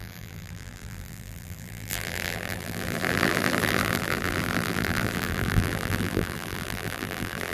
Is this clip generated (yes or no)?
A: yes